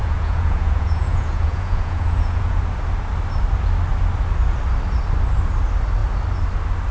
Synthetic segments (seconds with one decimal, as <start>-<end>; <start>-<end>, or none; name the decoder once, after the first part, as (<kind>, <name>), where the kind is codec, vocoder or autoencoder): 0.0-2.6 (vocoder, Vocos)